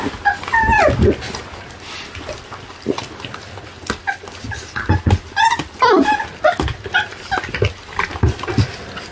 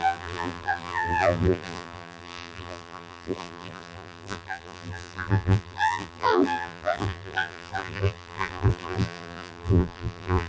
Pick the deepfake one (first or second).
second